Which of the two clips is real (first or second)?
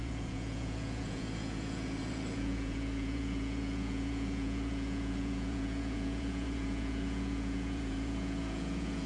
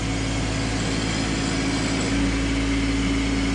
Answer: second